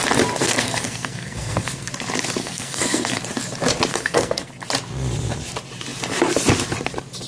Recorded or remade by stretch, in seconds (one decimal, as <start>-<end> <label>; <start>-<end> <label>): 0.0-0.4 recorded; 0.4-1.9 remade; 1.9-2.4 recorded; 2.4-3.2 remade; 3.2-3.9 recorded; 3.9-4.5 remade; 4.5-7.3 recorded